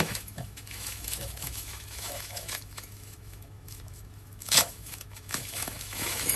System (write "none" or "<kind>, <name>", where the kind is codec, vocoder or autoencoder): autoencoder, DAC-VAE